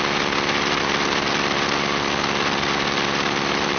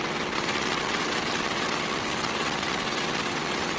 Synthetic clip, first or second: second